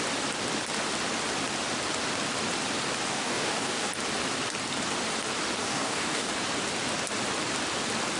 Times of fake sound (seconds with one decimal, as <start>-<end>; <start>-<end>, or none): 3.1-3.9; 5.6-6.3